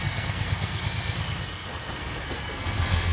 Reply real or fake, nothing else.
fake